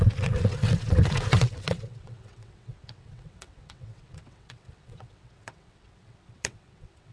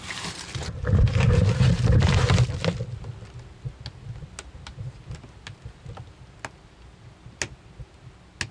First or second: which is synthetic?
first